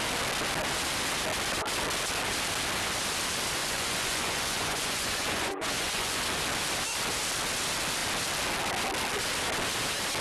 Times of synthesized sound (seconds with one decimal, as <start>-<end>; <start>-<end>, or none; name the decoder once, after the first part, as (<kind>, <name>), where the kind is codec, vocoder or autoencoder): 3.6-6.2 (vocoder, Vocos)